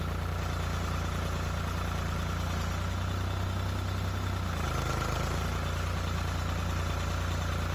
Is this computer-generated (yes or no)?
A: no